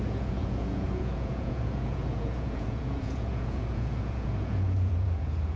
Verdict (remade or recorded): remade